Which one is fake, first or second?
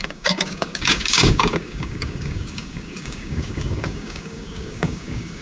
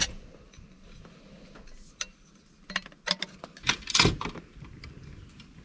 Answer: first